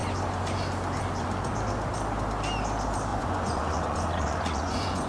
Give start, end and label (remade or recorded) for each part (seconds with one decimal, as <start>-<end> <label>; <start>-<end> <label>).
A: 0.0-3.1 recorded; 3.1-5.1 remade